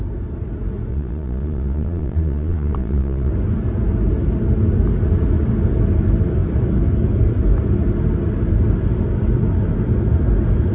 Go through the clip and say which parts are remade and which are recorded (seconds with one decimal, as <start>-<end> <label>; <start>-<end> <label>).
0.0-0.9 recorded; 0.9-3.3 remade; 3.3-10.7 recorded